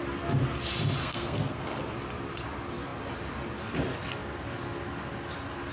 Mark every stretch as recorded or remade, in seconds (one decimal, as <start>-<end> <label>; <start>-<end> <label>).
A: 0.0-1.0 recorded; 1.0-1.8 remade; 1.8-5.7 recorded

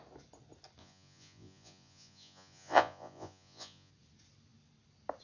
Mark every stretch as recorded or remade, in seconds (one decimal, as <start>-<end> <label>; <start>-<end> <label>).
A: 0.0-0.8 recorded; 0.8-3.9 remade; 3.9-5.2 recorded

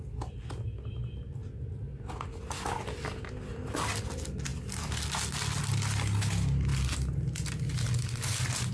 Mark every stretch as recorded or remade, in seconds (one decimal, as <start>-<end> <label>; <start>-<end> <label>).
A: 0.0-8.7 recorded

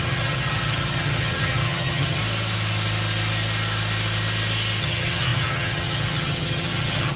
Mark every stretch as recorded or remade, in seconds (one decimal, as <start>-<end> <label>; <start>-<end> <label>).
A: 0.0-2.2 remade; 2.2-4.8 recorded; 4.8-7.2 remade